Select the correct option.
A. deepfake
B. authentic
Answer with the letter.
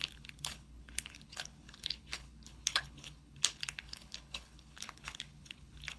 A